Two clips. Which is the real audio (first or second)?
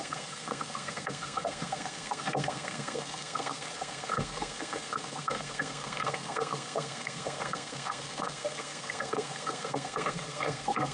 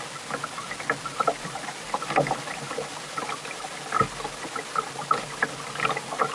second